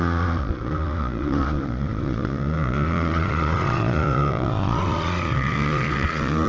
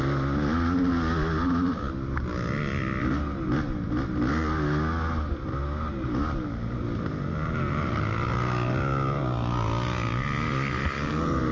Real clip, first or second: second